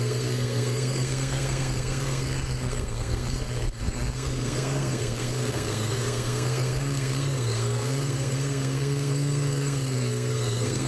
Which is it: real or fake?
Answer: fake